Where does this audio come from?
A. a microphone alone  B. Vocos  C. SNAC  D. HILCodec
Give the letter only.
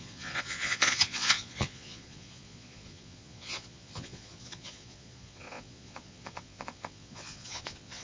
B